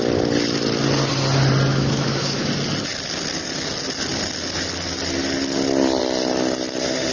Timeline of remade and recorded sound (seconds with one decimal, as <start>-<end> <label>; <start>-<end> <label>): 0.0-1.7 recorded; 1.7-2.5 remade; 2.5-7.1 recorded